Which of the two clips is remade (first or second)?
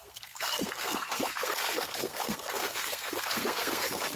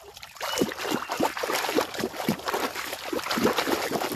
first